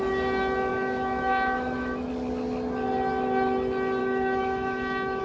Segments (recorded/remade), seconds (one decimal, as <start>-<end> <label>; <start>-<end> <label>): 0.0-0.7 recorded; 0.7-2.1 remade; 2.1-4.0 recorded; 4.0-5.2 remade